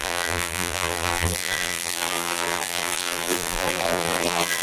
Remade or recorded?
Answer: remade